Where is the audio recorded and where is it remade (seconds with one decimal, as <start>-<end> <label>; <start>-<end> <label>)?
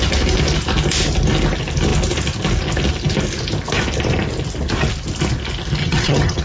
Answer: 0.0-5.8 recorded; 5.8-6.4 remade